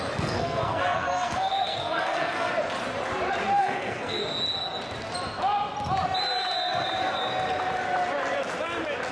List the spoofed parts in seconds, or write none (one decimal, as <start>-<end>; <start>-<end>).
0.0-2.5; 3.6-4.2